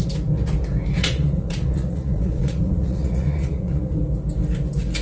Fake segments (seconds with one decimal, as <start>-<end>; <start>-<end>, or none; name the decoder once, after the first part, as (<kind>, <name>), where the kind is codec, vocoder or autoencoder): 1.0-4.0 (vocoder, Vocos)